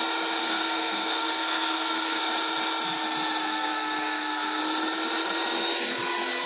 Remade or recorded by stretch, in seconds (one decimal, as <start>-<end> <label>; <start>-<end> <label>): 0.0-0.4 recorded; 0.4-2.2 remade; 2.2-3.4 recorded; 3.4-4.6 remade; 4.6-6.5 recorded